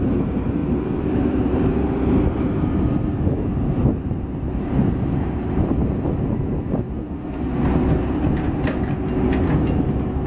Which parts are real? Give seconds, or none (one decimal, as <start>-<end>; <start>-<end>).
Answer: 5.8-10.3